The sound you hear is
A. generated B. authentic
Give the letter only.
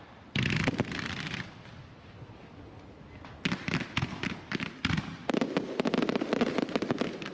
B